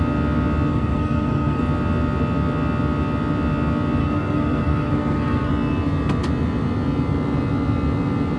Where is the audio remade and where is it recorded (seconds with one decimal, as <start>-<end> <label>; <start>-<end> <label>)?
0.0-0.7 recorded; 0.7-1.6 remade; 1.6-4.0 recorded; 4.0-5.5 remade; 5.5-8.4 recorded